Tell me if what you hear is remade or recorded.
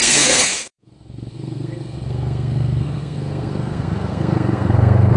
remade